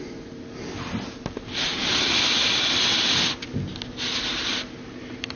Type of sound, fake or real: real